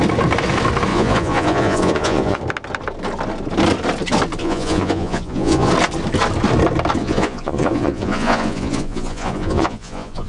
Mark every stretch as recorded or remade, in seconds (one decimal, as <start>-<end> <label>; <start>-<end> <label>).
0.0-0.9 recorded; 0.9-2.4 remade; 2.4-4.4 recorded; 4.4-5.7 remade; 5.7-7.0 recorded; 7.0-10.3 remade